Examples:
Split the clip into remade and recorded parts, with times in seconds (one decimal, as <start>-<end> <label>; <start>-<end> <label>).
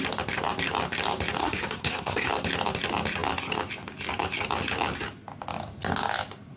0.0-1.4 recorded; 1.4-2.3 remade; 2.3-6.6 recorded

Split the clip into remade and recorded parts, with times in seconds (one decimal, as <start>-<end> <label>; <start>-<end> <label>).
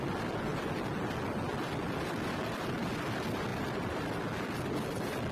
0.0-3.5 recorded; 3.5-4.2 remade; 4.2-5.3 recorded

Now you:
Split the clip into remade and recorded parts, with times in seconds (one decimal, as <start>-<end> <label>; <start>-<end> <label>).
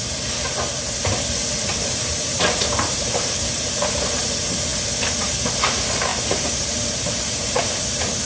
0.0-1.7 recorded; 1.7-4.2 remade; 4.2-6.1 recorded; 6.1-7.6 remade; 7.6-8.3 recorded